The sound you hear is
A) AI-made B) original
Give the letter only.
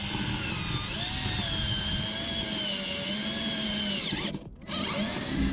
B